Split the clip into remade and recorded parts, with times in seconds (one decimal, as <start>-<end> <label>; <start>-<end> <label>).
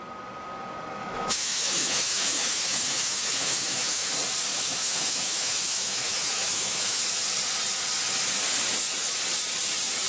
0.0-1.0 recorded; 1.0-4.1 remade; 4.1-4.5 recorded; 4.5-7.0 remade; 7.0-10.1 recorded